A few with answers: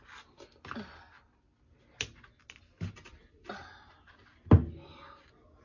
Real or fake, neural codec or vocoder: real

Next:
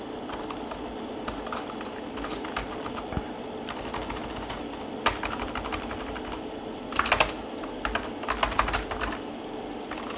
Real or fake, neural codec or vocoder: real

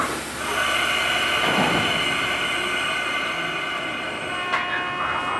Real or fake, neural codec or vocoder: real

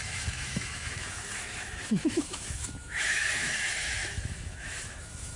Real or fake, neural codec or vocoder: fake, autoencoder, DAC-VAE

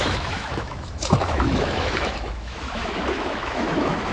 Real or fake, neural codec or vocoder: fake, autoencoder, DAC-VAE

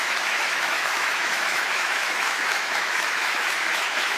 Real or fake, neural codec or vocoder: fake, autoencoder, DAC-VAE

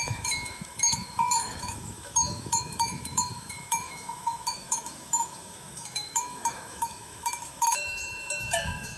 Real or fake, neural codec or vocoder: fake, autoencoder, DAC-VAE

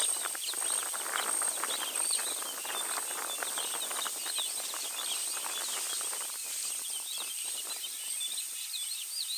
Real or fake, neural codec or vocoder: real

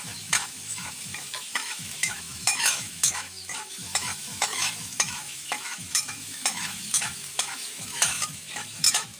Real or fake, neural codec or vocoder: fake, autoencoder, DAC-VAE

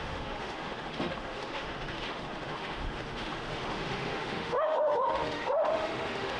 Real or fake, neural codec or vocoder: fake, autoencoder, DAC-VAE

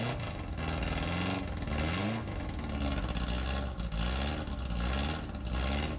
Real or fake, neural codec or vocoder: real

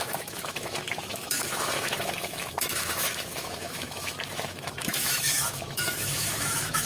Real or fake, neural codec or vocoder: fake, autoencoder, DAC-VAE